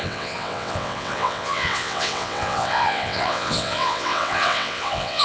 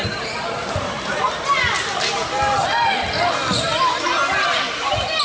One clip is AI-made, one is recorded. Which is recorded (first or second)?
second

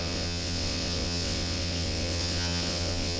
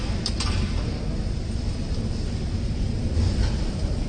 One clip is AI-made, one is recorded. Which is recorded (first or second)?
second